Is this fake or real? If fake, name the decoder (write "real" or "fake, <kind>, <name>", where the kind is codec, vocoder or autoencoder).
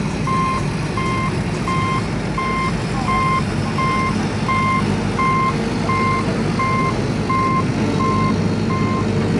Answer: real